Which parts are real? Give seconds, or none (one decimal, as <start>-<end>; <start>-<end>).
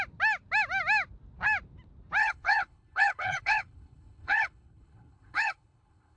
0.0-2.2